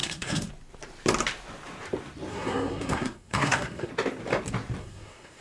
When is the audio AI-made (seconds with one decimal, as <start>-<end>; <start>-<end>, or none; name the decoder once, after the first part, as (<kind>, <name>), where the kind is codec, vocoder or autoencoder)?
0.0-0.5 (codec, SNAC); 2.3-3.9; 4.8-5.4